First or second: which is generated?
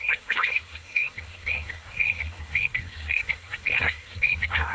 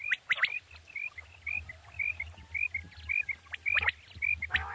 first